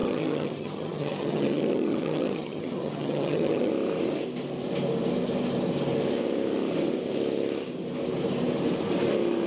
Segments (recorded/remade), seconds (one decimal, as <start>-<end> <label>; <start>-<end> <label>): 0.0-3.7 remade; 3.7-9.5 recorded